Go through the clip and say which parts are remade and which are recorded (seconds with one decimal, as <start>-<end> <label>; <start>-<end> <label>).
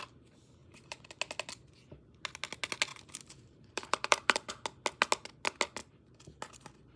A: 0.0-0.6 recorded; 0.6-1.1 remade; 1.1-2.9 recorded; 2.9-4.5 remade; 4.5-7.0 recorded